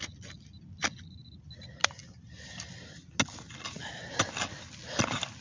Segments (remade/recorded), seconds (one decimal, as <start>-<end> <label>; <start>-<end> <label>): 0.0-5.4 recorded